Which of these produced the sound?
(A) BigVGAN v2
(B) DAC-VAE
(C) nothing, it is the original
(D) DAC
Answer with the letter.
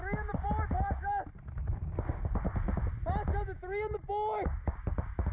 C